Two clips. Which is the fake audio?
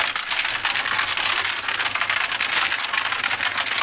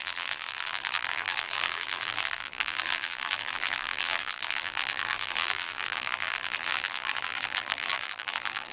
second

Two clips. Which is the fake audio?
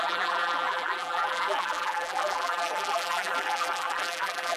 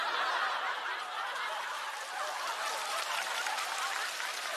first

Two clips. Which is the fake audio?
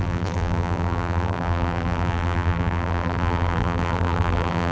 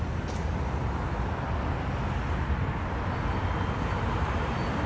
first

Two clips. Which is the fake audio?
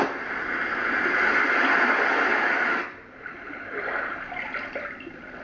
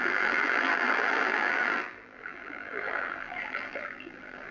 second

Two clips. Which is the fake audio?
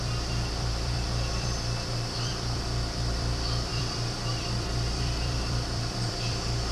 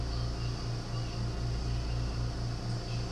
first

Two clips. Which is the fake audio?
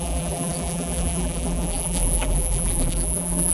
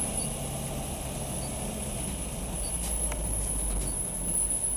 first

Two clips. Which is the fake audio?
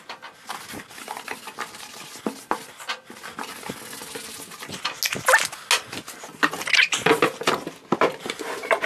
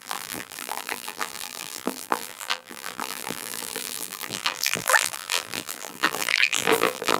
second